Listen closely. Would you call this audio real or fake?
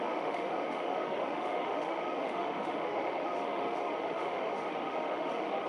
fake